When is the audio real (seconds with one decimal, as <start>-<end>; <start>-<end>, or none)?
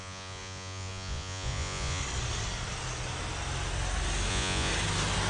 2.0-4.3; 4.7-5.3